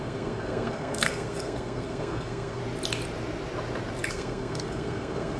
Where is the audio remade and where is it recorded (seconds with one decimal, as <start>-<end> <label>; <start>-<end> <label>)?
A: 0.0-2.6 remade; 2.6-4.1 recorded; 4.1-5.4 remade